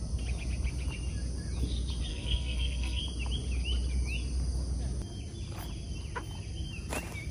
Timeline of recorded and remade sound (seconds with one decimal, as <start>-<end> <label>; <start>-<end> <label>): 0.0-2.1 recorded; 2.1-3.0 remade; 3.0-7.3 recorded